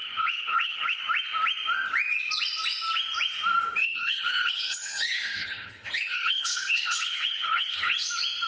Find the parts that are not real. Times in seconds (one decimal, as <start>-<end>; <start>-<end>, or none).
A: 0.0-1.0; 3.8-8.1